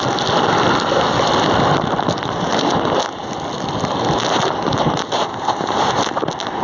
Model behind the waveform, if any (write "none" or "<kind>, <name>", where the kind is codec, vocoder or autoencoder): none